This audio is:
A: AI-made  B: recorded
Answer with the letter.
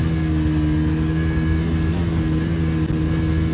B